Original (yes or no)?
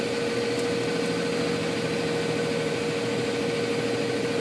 yes